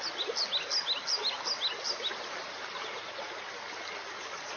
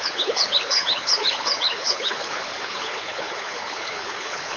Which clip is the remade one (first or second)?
second